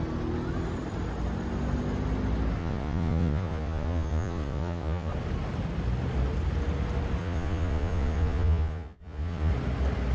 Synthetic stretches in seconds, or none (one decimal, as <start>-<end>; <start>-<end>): 2.6-5.1; 7.2-9.5